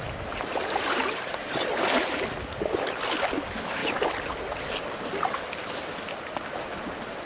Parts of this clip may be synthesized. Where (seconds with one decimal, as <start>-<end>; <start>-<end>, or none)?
none